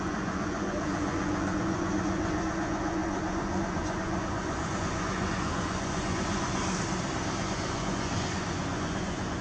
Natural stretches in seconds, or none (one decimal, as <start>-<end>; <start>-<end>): 6.6-7.4